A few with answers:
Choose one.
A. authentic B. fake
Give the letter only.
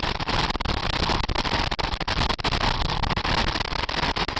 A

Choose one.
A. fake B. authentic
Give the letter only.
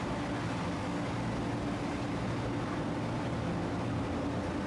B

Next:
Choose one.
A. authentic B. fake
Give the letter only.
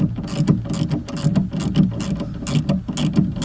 A